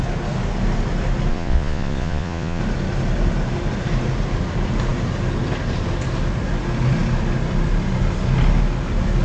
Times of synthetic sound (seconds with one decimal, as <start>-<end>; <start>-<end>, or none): 1.3-2.6